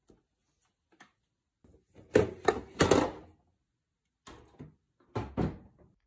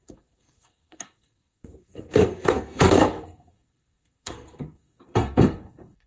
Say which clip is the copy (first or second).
second